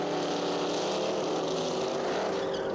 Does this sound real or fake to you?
real